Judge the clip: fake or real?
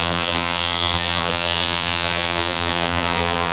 fake